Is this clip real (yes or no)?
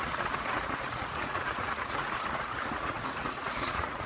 no